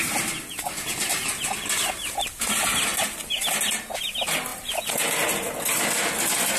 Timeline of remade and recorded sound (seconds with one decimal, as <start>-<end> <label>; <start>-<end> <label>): 0.0-6.6 recorded